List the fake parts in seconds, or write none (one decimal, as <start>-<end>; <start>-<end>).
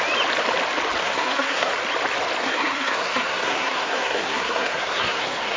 1.0-1.7; 2.4-5.6